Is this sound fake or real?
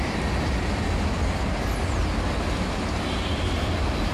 real